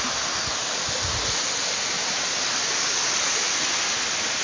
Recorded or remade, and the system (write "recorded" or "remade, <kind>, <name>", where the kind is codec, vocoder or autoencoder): recorded